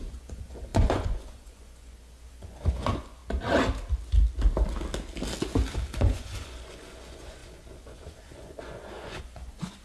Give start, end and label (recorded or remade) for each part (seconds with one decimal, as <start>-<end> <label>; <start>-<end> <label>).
0.0-3.2 remade; 3.2-5.9 recorded; 5.9-9.8 remade